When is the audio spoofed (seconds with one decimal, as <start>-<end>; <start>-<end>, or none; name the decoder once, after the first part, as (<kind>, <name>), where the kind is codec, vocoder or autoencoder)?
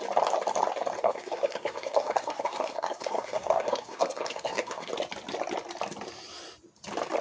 1.0-4.9 (codec, SNAC)